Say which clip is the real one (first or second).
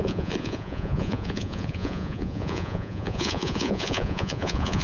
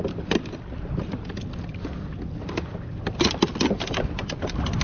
second